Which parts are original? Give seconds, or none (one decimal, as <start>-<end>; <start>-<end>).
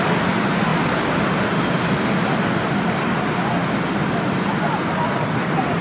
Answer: 0.0-5.8